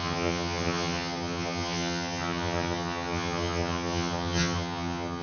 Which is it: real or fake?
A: fake